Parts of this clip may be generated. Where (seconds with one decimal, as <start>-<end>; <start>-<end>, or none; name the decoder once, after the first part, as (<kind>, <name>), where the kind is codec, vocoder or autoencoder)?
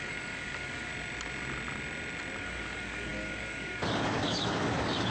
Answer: 0.0-0.9 (codec, DAC); 2.4-5.1